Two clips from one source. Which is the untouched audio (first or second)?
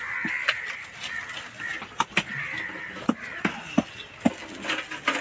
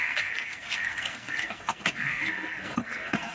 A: first